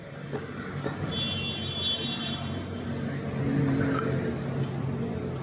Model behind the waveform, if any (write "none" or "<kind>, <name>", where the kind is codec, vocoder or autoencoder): none